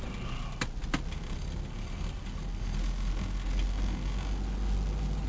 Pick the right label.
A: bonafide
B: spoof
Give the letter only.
A